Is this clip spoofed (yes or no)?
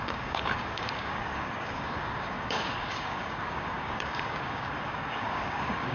yes